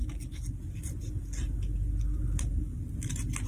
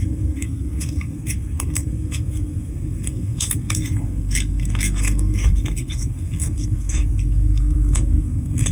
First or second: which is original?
first